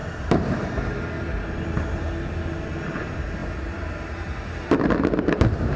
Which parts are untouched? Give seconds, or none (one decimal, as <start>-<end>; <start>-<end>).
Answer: 0.8-3.4; 4.1-5.8